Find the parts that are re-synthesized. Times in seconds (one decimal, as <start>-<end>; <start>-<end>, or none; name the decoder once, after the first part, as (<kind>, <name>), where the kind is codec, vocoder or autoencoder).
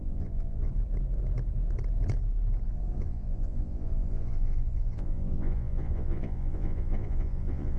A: 0.0-0.7 (vocoder, Vocos); 3.0-7.8